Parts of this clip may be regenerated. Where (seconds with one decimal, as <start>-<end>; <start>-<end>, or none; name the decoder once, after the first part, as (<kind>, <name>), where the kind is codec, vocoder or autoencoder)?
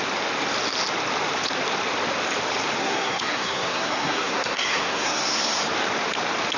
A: 2.8-5.6 (codec, SNAC)